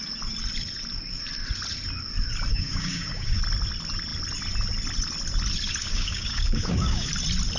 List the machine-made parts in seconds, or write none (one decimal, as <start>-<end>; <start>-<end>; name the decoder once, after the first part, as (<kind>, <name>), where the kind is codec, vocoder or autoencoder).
2.5-3.4 (codec, DAC); 5.8-7.1